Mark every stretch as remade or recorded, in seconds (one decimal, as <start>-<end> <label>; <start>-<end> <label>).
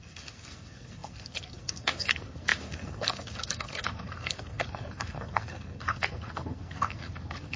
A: 0.0-7.6 remade